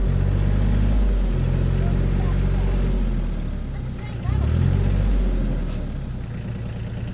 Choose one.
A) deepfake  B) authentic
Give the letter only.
B